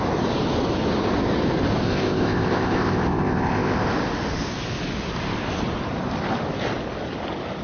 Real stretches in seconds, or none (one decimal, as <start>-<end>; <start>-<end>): 0.0-1.8; 3.9-7.6